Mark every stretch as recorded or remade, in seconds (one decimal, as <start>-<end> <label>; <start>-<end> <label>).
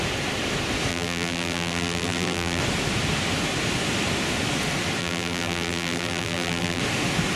0.0-0.9 recorded; 0.9-2.6 remade; 2.6-5.0 recorded; 5.0-6.8 remade; 6.8-7.4 recorded